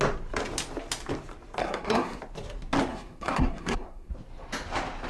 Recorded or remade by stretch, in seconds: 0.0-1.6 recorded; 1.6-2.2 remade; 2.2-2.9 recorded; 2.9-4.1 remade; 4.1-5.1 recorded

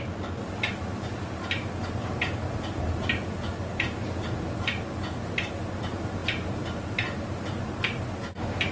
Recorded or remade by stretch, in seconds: 0.0-6.2 recorded; 6.2-7.7 remade; 7.7-8.7 recorded

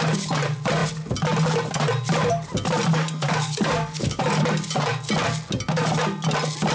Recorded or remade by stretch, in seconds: 0.0-2.9 recorded; 2.9-4.4 remade; 4.4-6.7 recorded

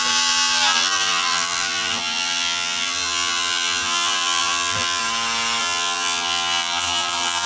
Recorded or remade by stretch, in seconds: 0.0-5.0 remade; 5.0-5.6 recorded; 5.6-7.5 remade